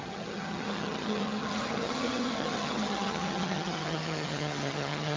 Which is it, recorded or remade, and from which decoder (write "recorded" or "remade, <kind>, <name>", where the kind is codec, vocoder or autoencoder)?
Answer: remade, vocoder, HiFi-GAN